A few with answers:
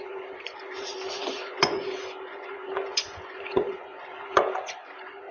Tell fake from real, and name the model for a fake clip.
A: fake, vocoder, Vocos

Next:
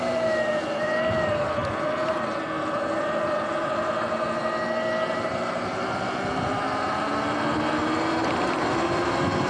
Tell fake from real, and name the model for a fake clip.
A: real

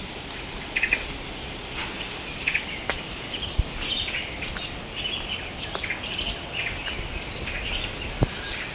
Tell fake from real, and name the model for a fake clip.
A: real